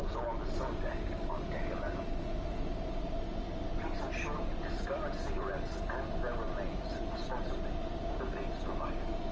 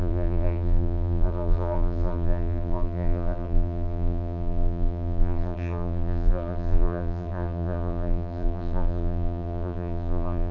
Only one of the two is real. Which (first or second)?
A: first